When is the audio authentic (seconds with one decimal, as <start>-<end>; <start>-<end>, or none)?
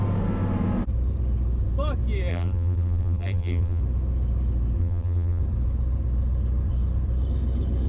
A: 0.0-2.3; 3.8-4.8; 5.4-7.9